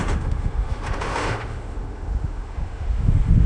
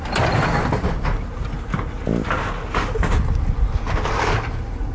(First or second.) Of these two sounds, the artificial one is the first